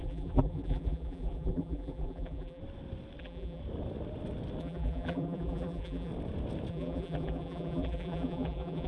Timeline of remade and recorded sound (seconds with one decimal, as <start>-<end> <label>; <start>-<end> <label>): 0.0-2.6 remade; 2.6-3.2 recorded; 3.2-3.6 remade; 3.6-4.6 recorded; 4.6-6.1 remade; 6.1-6.7 recorded; 6.7-8.9 remade